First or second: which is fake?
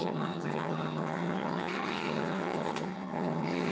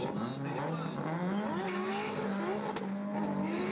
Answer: first